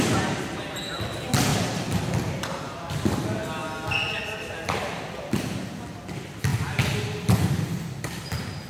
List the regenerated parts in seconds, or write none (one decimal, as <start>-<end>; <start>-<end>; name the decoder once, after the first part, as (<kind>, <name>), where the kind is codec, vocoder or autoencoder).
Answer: none